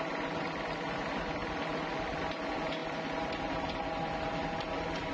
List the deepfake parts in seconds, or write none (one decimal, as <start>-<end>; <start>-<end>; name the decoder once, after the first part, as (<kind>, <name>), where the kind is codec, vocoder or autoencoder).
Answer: none